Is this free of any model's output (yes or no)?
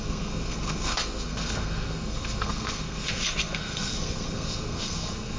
no